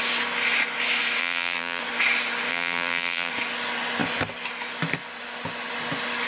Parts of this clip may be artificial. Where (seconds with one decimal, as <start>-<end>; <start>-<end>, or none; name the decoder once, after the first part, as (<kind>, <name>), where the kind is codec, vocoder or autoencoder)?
1.2-1.8 (vocoder, BigVGAN v2); 2.5-3.3